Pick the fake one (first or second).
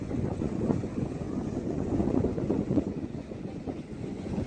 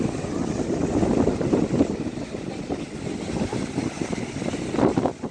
first